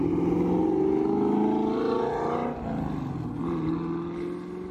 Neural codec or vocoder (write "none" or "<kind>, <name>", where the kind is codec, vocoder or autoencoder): none